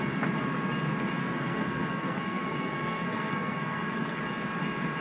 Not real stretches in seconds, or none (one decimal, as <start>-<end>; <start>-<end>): 1.2-4.2